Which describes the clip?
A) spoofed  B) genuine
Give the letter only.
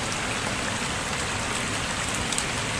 B